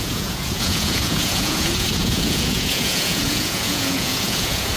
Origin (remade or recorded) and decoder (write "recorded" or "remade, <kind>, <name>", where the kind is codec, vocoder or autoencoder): remade, vocoder, Vocos